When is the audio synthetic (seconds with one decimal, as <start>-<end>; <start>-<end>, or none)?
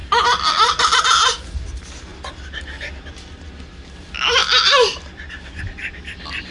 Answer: none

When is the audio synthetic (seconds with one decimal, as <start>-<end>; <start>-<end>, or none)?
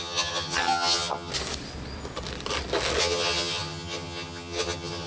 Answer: 0.0-1.3; 3.0-5.1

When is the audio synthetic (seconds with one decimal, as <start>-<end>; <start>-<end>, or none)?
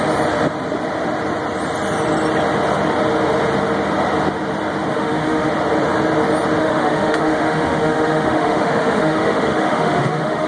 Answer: 4.9-5.5; 6.6-10.5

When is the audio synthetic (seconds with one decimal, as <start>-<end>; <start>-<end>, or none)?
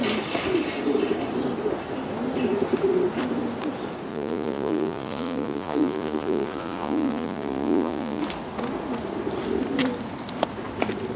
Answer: 4.1-8.2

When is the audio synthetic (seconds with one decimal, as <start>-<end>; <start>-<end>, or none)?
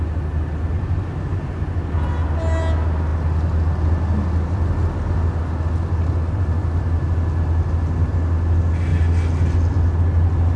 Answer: none